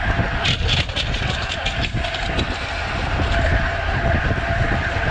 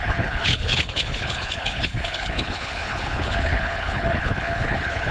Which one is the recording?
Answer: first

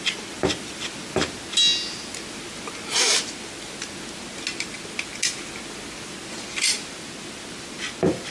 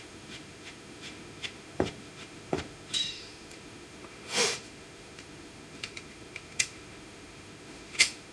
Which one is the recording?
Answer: first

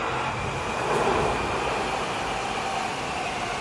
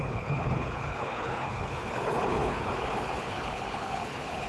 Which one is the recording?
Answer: first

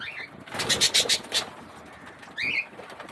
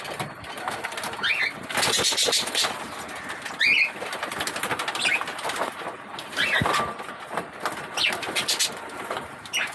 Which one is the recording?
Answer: second